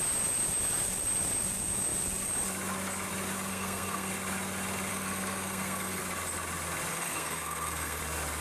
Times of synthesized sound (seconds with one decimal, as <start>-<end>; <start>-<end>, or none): 3.5-4.1; 4.9-6.0; 6.9-8.0